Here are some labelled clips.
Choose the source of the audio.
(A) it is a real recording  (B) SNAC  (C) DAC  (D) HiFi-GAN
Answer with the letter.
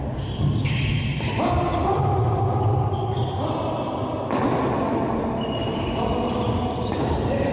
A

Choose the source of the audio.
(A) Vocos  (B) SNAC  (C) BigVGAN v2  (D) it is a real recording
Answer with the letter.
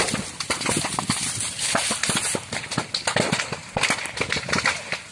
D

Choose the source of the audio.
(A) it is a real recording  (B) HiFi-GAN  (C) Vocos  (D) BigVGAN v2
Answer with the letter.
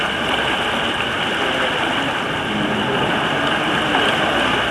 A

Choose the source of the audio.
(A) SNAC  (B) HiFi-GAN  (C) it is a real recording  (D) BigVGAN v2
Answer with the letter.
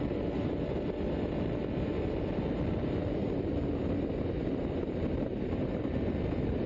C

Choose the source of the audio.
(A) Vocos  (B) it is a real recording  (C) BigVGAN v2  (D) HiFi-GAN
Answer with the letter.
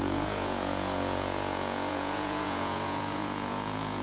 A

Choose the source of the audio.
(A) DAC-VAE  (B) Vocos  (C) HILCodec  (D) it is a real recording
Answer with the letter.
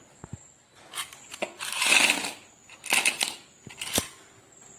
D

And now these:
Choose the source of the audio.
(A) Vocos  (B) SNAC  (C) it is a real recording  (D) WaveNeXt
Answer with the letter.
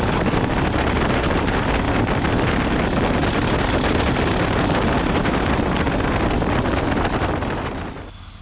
C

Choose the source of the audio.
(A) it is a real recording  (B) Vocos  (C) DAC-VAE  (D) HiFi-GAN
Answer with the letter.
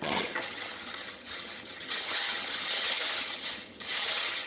D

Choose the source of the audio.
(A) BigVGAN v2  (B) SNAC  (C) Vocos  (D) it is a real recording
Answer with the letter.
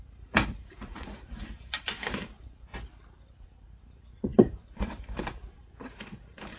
A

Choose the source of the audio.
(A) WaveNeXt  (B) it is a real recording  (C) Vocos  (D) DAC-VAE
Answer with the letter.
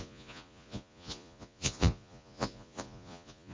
C